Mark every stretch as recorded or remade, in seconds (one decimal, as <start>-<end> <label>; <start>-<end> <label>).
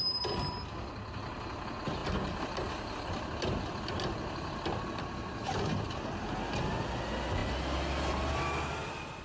0.0-9.2 recorded